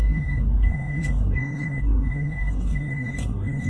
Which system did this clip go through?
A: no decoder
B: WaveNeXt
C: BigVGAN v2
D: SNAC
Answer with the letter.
D